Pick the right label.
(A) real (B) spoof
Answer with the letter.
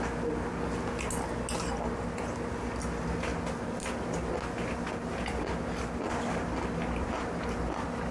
A